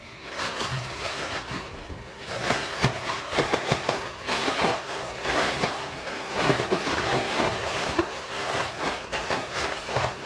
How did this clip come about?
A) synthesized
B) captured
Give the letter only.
A